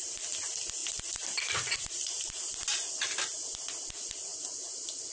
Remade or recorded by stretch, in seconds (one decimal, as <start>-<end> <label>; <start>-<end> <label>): 0.0-5.1 recorded